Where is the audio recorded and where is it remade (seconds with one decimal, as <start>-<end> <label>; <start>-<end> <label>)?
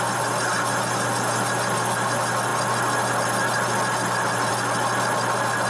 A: 0.0-5.7 recorded